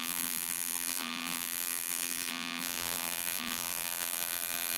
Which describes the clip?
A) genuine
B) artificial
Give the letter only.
B